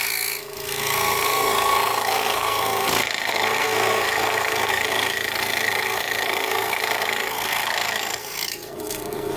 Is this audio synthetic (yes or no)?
yes